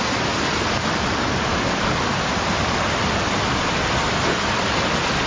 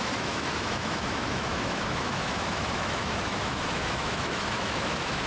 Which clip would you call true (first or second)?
first